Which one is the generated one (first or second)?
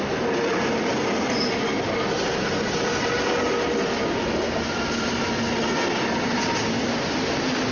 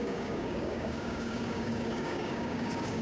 second